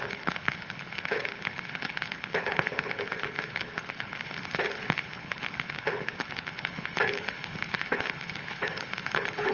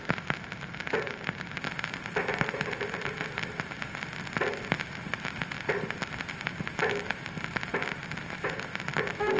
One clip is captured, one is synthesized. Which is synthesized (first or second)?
first